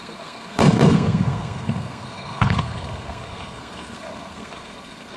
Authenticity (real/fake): fake